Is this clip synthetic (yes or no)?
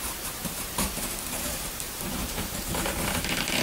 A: yes